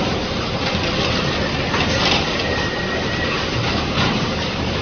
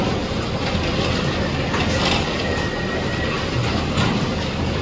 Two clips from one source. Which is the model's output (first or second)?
first